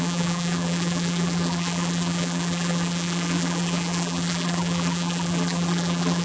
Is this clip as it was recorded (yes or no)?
no